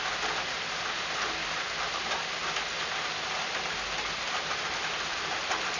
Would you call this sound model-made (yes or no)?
no